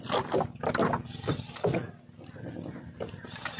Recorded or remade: recorded